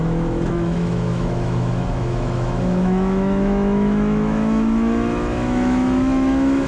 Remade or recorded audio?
remade